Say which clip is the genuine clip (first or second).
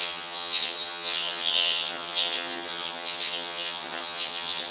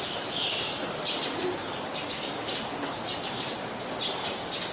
second